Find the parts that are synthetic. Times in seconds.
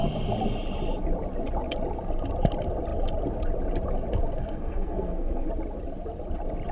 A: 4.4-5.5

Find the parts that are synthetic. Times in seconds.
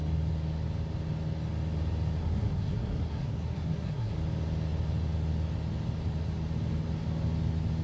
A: 2.2-4.1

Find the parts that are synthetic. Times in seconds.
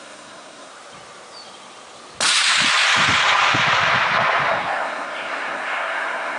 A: 0.0-0.7; 4.5-6.4